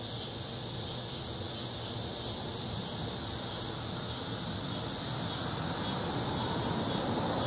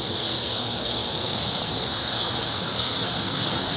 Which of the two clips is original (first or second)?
first